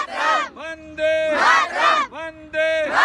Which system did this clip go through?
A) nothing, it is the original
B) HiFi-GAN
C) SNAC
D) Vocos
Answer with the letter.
A